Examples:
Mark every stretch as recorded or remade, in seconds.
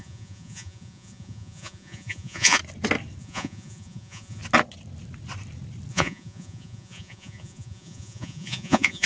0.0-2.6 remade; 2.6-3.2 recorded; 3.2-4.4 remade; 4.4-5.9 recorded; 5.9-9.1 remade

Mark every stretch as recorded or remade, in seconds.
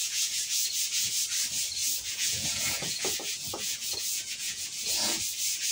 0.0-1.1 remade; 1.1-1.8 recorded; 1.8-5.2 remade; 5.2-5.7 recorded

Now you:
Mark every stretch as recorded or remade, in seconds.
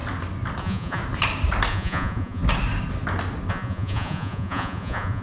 0.0-0.6 recorded; 0.6-1.0 remade; 1.0-1.7 recorded; 1.7-2.4 remade; 2.4-3.5 recorded; 3.5-5.2 remade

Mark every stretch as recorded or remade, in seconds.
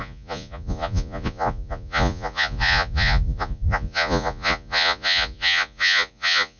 0.0-6.6 remade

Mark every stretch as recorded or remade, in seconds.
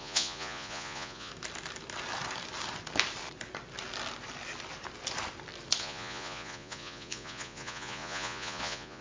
0.0-1.3 remade; 1.3-5.8 recorded; 5.8-9.0 remade